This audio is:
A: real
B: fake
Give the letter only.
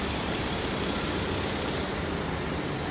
B